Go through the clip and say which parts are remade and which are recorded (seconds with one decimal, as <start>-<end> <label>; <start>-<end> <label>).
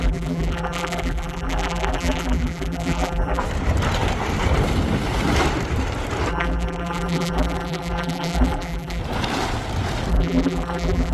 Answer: 0.0-3.4 remade; 3.4-6.3 recorded; 6.3-9.0 remade; 9.0-10.1 recorded; 10.1-11.1 remade